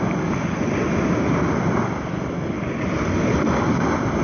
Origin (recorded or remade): recorded